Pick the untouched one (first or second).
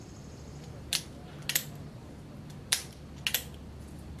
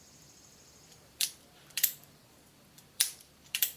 first